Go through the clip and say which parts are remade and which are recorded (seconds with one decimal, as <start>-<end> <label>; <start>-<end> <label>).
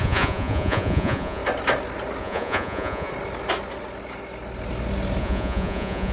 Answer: 0.0-1.4 remade; 1.4-2.2 recorded; 2.2-3.1 remade; 3.1-5.2 recorded; 5.2-6.1 remade